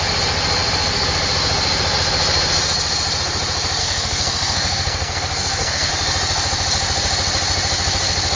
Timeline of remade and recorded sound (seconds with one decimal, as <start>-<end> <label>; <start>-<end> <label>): 0.0-3.8 recorded; 3.8-5.9 remade; 5.9-8.4 recorded